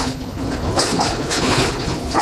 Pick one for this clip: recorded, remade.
remade